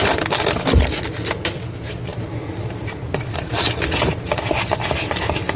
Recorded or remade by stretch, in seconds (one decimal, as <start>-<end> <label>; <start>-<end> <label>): 0.0-5.6 recorded